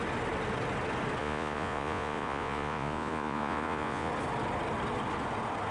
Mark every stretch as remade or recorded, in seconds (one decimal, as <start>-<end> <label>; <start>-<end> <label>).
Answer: 0.0-1.2 recorded; 1.2-4.1 remade; 4.1-5.7 recorded